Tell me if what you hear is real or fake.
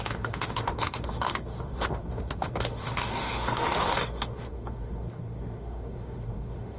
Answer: fake